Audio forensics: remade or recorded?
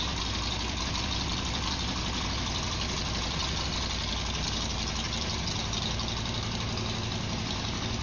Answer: recorded